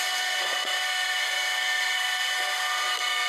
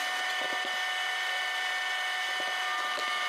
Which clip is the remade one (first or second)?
first